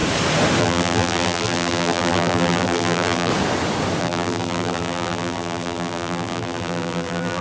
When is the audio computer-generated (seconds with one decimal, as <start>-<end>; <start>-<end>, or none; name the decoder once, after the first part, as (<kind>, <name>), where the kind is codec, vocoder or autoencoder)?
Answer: 0.6-3.3 (vocoder, BigVGAN v2); 4.0-7.4